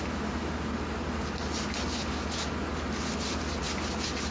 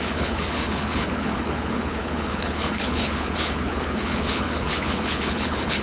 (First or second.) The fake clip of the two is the second